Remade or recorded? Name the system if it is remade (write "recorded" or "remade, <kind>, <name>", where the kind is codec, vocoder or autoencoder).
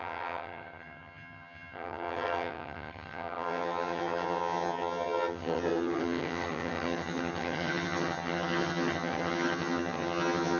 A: remade, vocoder, HiFi-GAN